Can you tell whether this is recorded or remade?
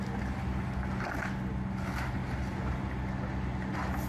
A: recorded